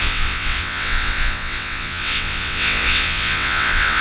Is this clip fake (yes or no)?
yes